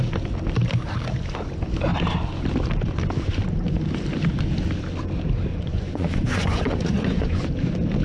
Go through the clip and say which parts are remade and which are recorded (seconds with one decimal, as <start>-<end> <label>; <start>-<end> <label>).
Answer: 0.0-5.5 recorded; 5.5-7.5 remade; 7.5-8.0 recorded